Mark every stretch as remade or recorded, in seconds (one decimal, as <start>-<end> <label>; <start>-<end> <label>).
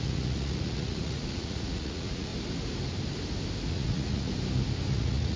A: 0.0-2.3 remade; 2.3-3.7 recorded; 3.7-4.3 remade; 4.3-4.9 recorded; 4.9-5.4 remade